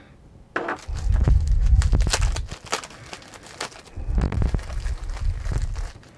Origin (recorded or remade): recorded